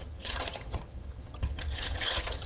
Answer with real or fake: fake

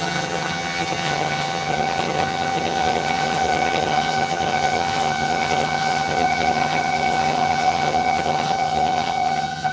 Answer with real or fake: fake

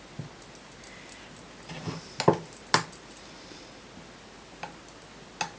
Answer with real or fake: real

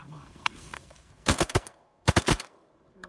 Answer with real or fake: fake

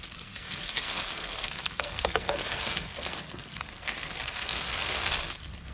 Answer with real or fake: fake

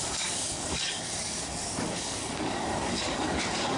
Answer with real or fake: fake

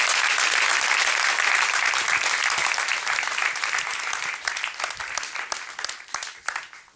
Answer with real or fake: real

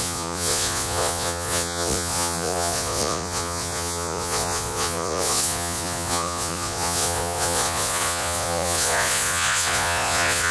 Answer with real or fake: fake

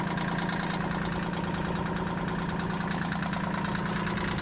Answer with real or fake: real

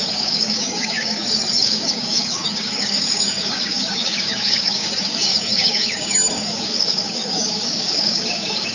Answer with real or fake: fake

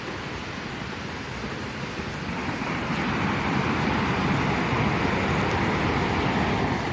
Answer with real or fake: real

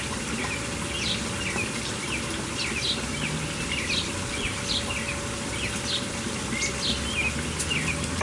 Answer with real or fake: real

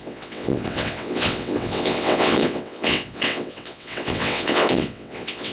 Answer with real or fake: fake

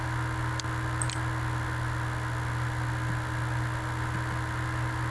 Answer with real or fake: real